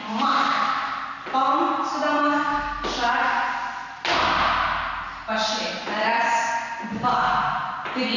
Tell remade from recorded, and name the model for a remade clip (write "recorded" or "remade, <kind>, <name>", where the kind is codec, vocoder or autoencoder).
recorded